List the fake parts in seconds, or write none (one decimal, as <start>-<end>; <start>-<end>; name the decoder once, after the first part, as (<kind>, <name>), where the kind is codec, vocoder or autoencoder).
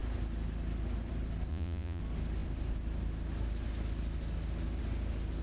1.5-2.0 (vocoder, Vocos)